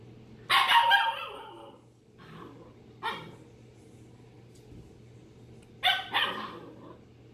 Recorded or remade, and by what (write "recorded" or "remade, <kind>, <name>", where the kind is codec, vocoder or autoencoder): recorded